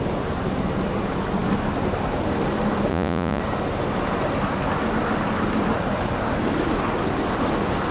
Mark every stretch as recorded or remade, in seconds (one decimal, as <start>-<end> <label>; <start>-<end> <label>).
0.0-2.9 recorded; 2.9-3.4 remade; 3.4-7.9 recorded